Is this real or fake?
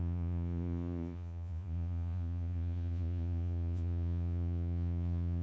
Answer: fake